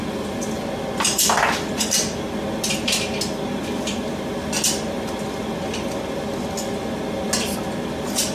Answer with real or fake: real